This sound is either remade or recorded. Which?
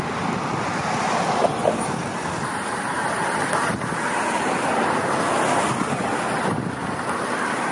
recorded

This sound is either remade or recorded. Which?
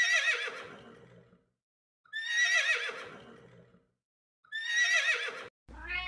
recorded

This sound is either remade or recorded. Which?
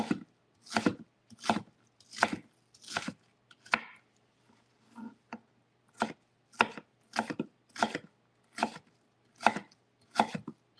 recorded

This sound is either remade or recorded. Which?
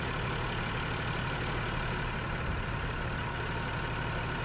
recorded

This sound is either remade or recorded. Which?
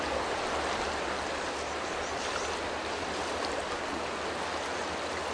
recorded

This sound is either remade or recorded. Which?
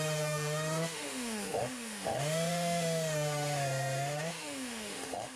remade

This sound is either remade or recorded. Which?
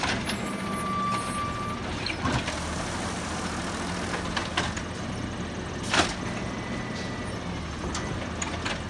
recorded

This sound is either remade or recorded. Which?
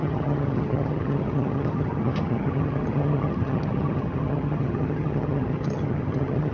remade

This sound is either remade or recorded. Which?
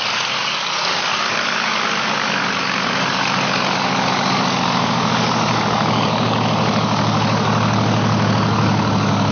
remade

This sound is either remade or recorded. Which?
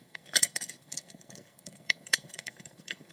remade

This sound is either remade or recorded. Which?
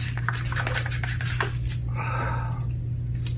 recorded